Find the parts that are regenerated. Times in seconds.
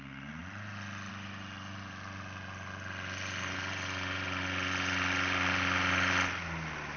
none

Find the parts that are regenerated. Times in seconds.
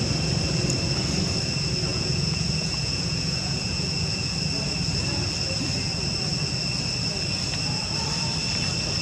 1.9-4.3 (vocoder, Vocos)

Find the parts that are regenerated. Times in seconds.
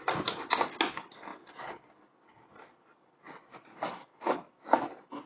none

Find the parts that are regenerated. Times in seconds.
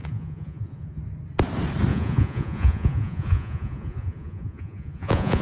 0.0-1.0 (vocoder, Vocos); 1.9-5.4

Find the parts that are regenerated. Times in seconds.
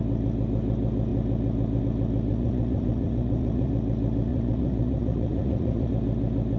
2.3-3.7 (vocoder, Vocos); 4.3-5.9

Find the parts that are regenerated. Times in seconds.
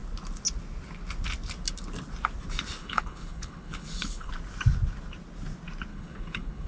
2.8-4.3 (codec, HILCodec); 5.9-6.7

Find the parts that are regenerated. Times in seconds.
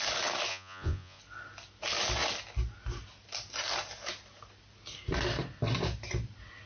0.5-1.2 (vocoder, Vocos)